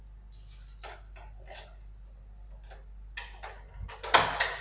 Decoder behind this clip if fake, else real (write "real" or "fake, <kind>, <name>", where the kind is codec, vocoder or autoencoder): real